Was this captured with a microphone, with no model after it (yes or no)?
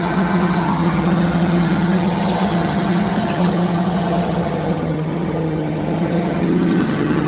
no